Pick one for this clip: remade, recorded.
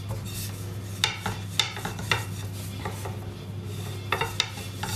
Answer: recorded